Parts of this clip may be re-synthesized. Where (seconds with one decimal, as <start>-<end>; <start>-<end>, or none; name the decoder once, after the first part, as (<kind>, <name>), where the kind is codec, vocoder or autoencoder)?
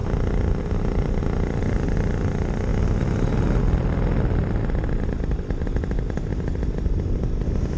none